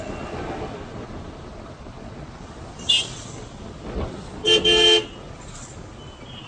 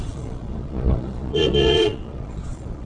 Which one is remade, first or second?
second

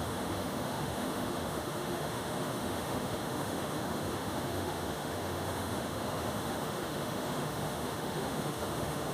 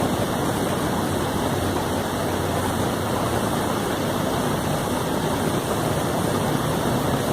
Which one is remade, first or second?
first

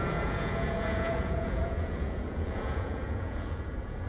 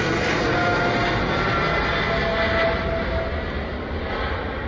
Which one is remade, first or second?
first